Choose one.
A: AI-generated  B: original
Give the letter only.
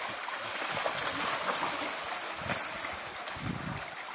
B